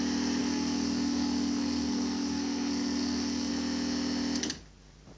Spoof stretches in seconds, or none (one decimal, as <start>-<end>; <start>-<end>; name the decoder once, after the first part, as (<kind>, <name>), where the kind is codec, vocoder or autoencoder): 0.4-3.5 (codec, SNAC)